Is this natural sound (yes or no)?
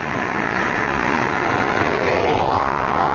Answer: no